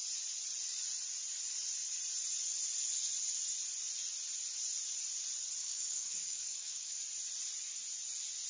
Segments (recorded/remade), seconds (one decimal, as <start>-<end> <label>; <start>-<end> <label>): 0.0-5.6 recorded; 5.6-7.0 remade; 7.0-8.5 recorded

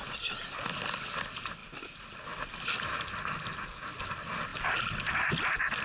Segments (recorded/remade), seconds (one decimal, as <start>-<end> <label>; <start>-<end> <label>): 0.0-5.8 recorded